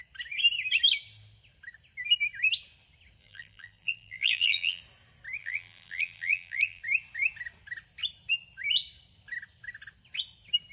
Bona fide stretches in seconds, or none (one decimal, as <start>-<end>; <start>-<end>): 0.0-3.2; 4.8-5.4; 6.8-10.7